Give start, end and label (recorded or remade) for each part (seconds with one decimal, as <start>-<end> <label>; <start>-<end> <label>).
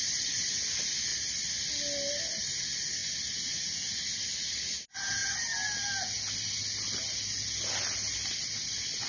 0.0-9.1 recorded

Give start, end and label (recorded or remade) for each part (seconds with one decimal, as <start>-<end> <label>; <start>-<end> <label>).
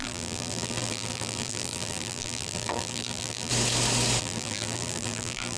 0.0-3.5 remade; 3.5-4.2 recorded; 4.2-5.6 remade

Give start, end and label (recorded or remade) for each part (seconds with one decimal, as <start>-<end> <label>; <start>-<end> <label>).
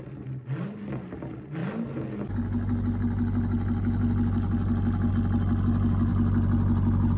0.0-7.2 recorded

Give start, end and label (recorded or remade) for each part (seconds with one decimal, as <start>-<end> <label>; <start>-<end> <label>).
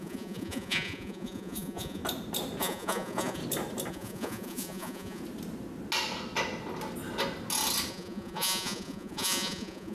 0.0-2.0 remade; 2.0-2.6 recorded; 2.6-3.4 remade; 3.4-3.9 recorded; 3.9-5.2 remade; 5.2-7.9 recorded; 7.9-9.9 remade